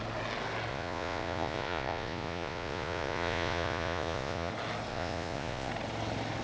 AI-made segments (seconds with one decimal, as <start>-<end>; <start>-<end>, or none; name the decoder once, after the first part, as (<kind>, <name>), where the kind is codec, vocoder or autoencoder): 0.7-4.5 (vocoder, Vocos); 4.9-5.7